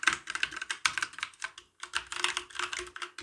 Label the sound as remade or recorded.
recorded